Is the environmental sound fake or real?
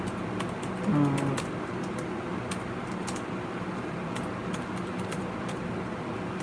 real